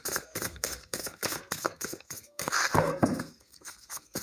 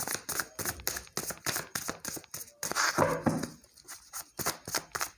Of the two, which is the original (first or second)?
second